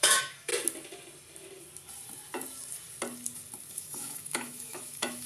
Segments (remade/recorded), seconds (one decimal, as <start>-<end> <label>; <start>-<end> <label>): 0.0-0.5 remade; 0.5-3.7 recorded; 3.7-5.3 remade